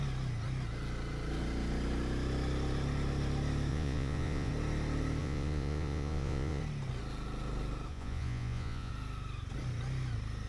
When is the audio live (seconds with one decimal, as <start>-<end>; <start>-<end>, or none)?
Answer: 0.0-3.7; 4.5-5.2; 6.6-7.9; 8.9-10.5